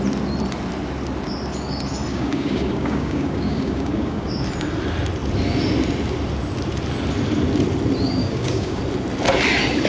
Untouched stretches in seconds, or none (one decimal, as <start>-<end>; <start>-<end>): 0.0-2.1; 4.3-8.2; 8.8-9.9